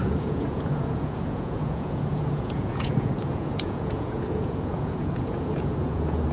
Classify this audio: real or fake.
fake